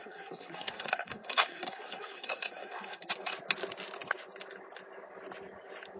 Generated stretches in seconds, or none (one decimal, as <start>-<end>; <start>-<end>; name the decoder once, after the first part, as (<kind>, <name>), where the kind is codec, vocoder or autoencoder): 0.0-3.1 (codec, SNAC)